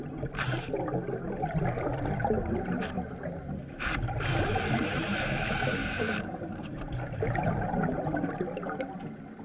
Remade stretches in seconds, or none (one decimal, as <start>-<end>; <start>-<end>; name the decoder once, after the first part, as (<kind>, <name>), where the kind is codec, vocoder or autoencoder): 5.0-7.5 (vocoder, BigVGAN v2)